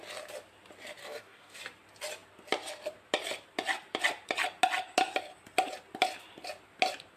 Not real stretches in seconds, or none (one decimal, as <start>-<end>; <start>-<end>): 1.0-1.6